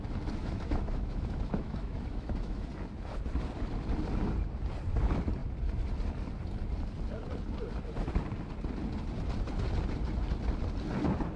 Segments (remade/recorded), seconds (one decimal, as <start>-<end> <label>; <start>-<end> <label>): 0.0-0.4 recorded; 0.4-2.7 remade; 2.7-11.4 recorded